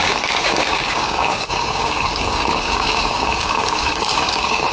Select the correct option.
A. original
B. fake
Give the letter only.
B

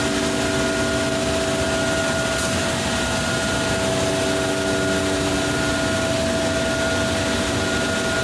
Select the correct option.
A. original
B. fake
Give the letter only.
A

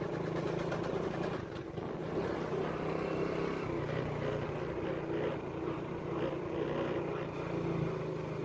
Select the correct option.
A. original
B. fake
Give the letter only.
A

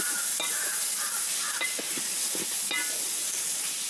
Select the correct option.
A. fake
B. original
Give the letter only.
B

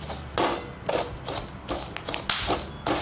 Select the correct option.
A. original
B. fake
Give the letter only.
A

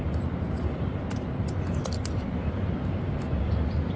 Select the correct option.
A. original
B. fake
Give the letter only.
A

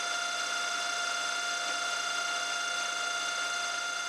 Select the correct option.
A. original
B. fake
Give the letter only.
A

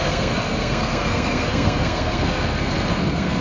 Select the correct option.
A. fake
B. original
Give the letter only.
A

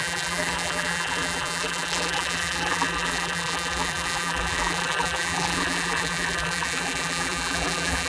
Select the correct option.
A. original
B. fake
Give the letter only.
B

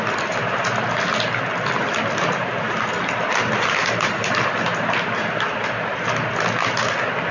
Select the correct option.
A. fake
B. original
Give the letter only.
B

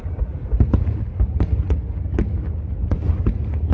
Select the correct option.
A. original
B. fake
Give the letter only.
A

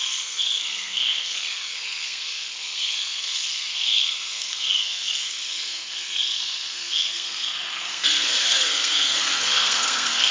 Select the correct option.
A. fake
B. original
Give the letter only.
A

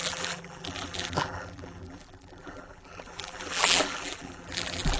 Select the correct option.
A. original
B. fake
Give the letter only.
B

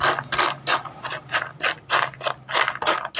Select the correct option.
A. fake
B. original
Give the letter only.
B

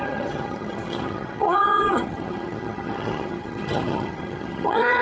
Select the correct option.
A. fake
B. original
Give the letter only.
A